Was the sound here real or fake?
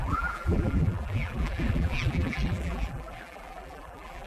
fake